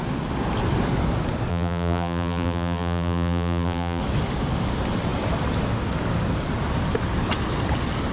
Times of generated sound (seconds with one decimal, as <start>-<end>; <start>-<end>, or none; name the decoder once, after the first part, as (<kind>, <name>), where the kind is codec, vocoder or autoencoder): 1.5-4.0 (vocoder, BigVGAN v2)